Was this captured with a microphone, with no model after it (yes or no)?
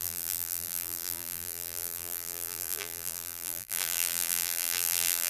no